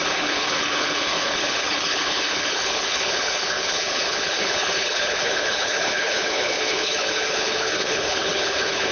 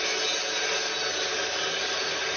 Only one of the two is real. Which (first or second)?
second